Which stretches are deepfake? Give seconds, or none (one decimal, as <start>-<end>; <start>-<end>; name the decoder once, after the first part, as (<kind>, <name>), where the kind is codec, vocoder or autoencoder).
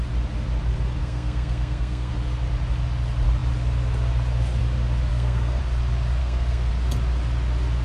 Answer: 1.0-2.1 (codec, SNAC); 5.1-5.6; 6.2-6.7